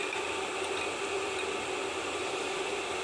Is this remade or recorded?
recorded